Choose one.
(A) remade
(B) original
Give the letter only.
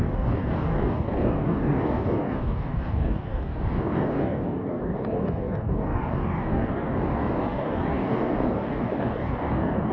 A